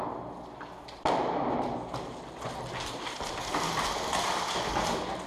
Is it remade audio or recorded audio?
recorded